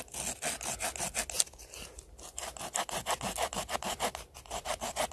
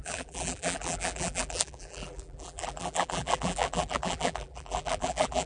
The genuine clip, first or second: first